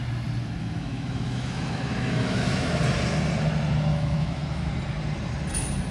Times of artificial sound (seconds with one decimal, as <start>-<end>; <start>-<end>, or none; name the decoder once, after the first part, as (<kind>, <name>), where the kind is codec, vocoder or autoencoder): 0.6-2.8 (autoencoder, DAC-VAE); 3.9-4.7